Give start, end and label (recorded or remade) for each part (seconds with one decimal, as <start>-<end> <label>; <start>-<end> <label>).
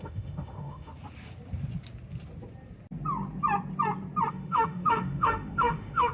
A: 0.0-0.9 remade; 0.9-4.3 recorded; 4.3-6.1 remade